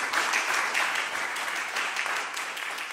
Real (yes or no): no